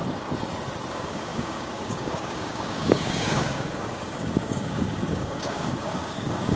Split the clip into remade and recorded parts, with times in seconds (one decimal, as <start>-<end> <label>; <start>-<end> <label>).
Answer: 0.0-0.9 recorded; 0.9-6.6 remade